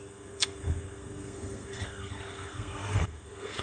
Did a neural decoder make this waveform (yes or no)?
yes